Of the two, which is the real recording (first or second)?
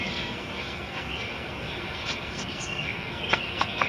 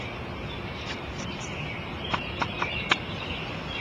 second